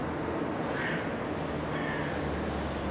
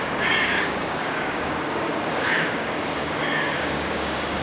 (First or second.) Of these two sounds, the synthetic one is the second